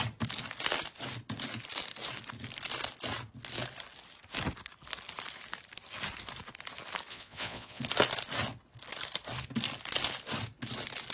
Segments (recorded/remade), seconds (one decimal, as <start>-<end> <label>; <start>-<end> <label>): 0.0-7.1 recorded; 7.1-7.8 remade; 7.8-11.1 recorded